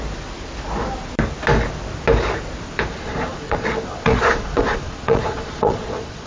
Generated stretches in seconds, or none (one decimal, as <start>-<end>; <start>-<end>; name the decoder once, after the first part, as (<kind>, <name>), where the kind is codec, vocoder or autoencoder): 3.0-6.3 (vocoder, Vocos)